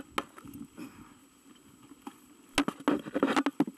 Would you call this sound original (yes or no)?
yes